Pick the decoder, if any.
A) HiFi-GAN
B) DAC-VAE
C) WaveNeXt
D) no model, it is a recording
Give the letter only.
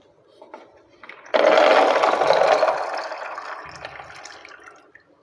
D